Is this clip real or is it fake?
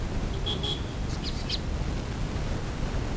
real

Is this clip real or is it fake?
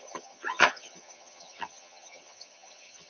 fake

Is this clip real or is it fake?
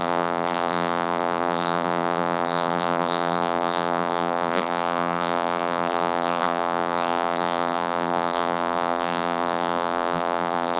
fake